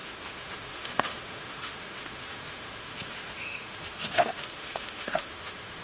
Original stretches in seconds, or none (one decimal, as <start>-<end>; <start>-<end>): none